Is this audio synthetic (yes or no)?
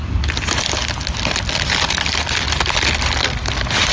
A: no